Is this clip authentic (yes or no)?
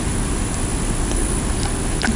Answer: yes